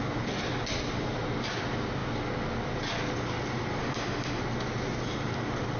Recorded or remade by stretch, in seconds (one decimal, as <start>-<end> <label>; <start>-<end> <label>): 0.0-3.8 recorded; 3.8-4.4 remade; 4.4-5.8 recorded